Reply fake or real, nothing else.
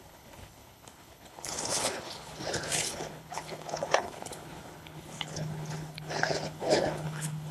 fake